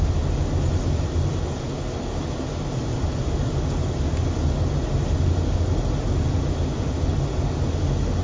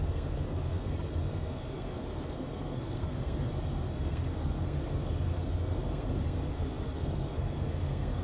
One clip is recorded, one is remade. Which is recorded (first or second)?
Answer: first